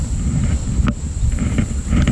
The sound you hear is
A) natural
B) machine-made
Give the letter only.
A